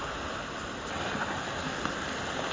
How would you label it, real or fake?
real